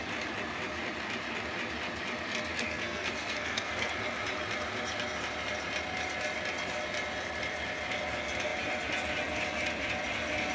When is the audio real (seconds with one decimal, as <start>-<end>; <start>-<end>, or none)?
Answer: 0.0-2.5; 3.9-10.5